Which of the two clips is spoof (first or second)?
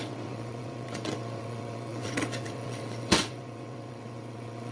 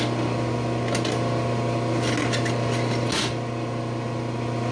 first